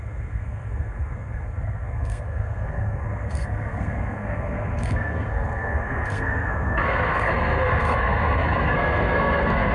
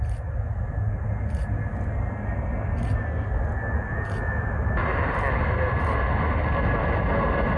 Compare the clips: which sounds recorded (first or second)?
second